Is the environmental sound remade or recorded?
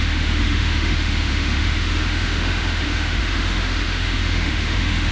remade